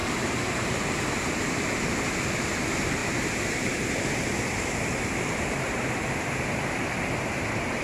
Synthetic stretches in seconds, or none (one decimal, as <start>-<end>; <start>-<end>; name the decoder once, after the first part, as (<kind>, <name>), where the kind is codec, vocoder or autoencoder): 0.0-1.3 (vocoder, BigVGAN v2); 3.0-7.8